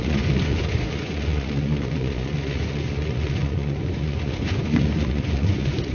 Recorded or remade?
remade